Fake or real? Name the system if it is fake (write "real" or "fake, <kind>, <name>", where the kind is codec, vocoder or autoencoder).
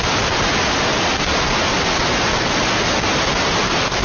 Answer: real